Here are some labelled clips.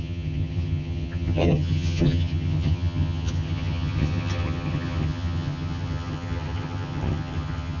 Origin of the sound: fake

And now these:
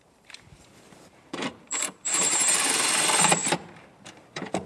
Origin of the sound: fake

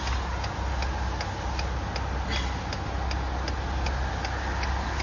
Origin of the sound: real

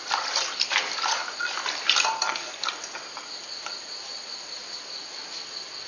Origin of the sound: real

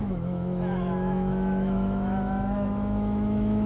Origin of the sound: fake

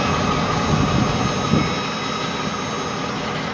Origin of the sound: real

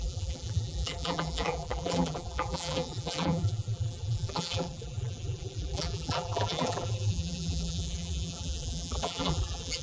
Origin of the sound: fake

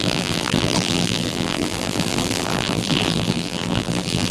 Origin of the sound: fake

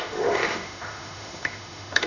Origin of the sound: fake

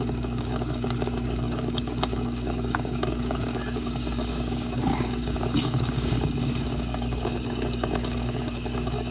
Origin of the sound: fake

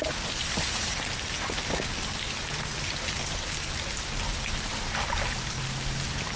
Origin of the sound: real